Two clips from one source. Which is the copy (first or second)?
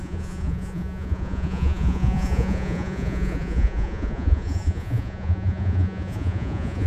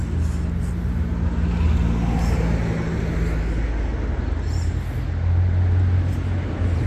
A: first